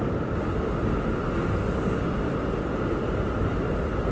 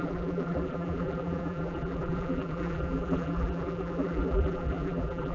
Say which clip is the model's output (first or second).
second